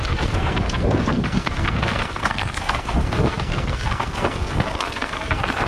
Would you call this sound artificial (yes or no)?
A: yes